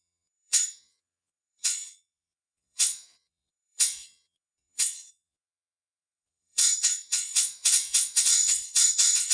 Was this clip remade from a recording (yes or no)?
yes